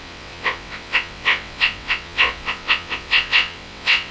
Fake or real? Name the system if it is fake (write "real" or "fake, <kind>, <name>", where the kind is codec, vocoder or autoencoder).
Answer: fake, vocoder, WaveNeXt